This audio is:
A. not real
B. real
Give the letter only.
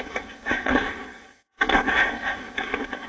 A